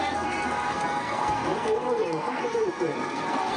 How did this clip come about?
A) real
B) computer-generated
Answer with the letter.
B